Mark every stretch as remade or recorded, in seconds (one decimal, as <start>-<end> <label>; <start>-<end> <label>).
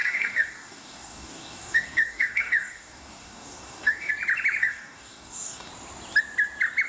0.0-4.1 remade; 4.1-4.6 recorded; 4.6-5.7 remade; 5.7-6.9 recorded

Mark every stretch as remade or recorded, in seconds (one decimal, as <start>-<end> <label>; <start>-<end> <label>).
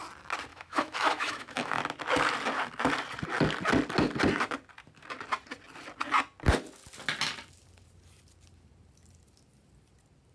0.0-0.5 recorded; 0.5-1.8 remade; 1.8-10.3 recorded